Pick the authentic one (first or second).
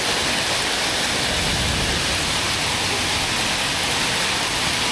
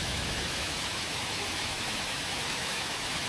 first